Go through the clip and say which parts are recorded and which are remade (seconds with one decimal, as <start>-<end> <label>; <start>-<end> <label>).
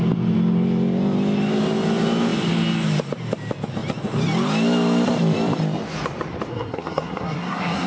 0.0-6.5 recorded; 6.5-7.9 remade